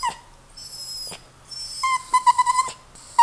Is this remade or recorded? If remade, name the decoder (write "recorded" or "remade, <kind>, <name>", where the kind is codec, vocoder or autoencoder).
recorded